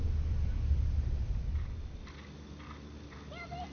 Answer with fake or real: real